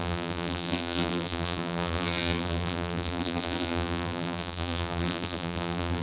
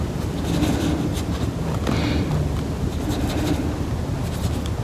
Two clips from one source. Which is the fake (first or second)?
first